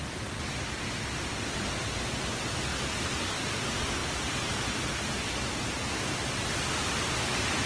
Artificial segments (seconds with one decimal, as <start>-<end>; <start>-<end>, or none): none